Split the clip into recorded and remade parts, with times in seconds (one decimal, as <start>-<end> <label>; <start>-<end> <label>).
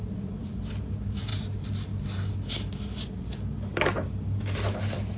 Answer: 0.0-5.2 recorded